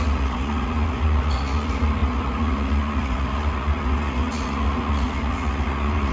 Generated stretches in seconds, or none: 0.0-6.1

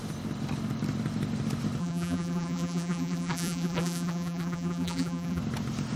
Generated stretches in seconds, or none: 1.8-5.4

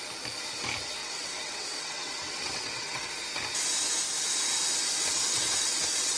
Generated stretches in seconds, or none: 1.0-3.1; 5.3-6.2

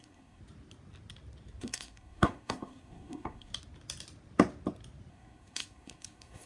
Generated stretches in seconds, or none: 0.0-0.4; 1.6-3.5; 5.1-6.5